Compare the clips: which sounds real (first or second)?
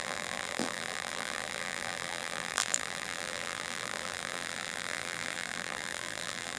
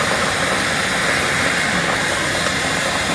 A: second